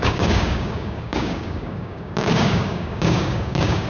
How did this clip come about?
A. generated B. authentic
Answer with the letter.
A